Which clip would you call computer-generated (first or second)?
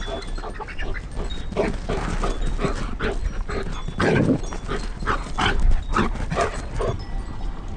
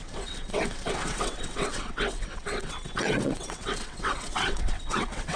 second